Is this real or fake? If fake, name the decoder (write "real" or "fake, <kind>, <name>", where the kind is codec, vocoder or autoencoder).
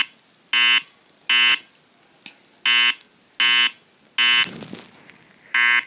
real